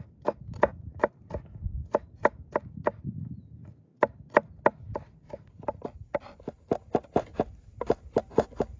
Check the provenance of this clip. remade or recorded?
recorded